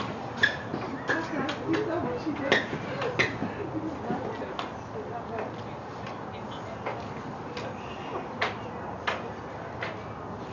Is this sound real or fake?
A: real